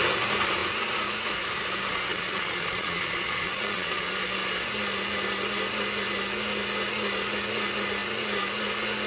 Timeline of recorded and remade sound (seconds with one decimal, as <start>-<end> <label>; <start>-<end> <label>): 0.0-2.1 recorded; 2.1-4.1 remade; 4.1-9.1 recorded